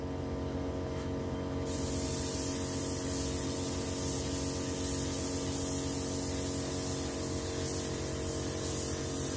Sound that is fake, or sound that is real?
real